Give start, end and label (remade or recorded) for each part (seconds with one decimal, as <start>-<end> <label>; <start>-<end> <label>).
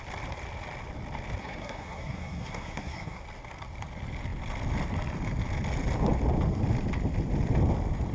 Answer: 0.0-1.4 recorded; 1.4-3.2 remade; 3.2-8.1 recorded